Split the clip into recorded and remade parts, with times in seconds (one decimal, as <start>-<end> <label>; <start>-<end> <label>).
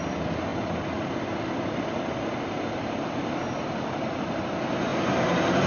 0.0-5.7 recorded